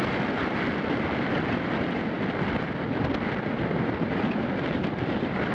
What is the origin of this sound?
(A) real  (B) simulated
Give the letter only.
A